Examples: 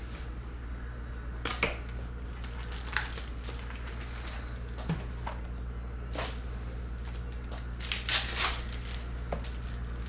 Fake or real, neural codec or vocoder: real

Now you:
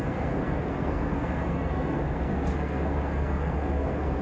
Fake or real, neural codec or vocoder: fake, codec, SNAC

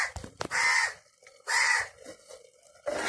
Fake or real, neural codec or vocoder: real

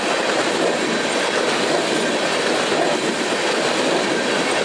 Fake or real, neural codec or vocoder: real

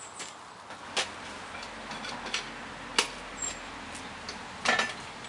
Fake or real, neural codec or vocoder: real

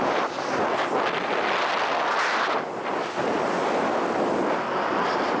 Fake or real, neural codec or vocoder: real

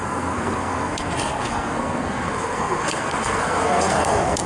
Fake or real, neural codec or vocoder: fake, codec, SNAC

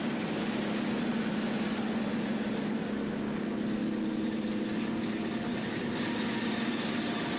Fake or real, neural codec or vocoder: real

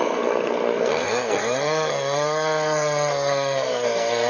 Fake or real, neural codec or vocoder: fake, codec, SNAC